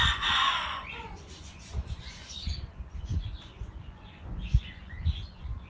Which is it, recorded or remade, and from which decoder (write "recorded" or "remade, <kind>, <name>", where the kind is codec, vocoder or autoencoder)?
remade, vocoder, Vocos